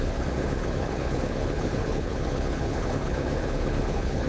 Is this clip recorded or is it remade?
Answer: remade